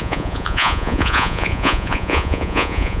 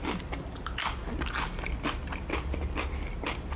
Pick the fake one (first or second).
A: first